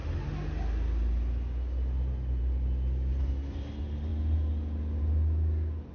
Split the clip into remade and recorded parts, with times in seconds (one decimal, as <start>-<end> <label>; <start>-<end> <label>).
0.0-5.9 recorded